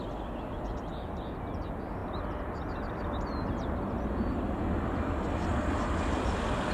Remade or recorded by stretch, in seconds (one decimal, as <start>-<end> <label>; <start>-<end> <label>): 0.0-6.7 recorded